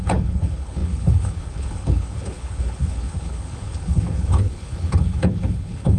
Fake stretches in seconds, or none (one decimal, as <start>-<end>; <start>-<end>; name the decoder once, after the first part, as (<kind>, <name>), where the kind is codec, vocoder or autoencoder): 0.0-6.0 (codec, HILCodec)